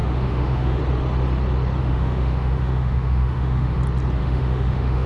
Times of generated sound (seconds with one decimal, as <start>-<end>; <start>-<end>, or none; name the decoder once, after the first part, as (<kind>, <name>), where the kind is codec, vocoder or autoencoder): 0.0-0.8 (autoencoder, DAC-VAE); 1.8-3.8; 4.2-5.1